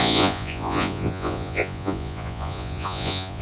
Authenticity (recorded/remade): remade